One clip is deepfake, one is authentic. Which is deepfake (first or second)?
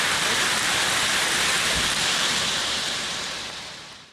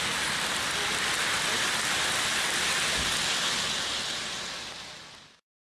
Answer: first